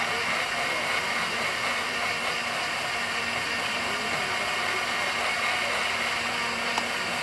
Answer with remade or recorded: recorded